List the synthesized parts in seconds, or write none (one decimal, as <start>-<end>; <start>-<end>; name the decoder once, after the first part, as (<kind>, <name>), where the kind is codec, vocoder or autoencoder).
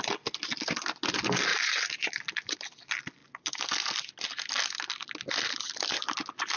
1.5-2.2 (vocoder, BigVGAN v2)